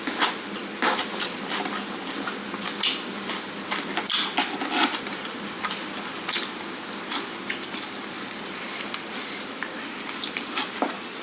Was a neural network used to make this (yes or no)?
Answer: no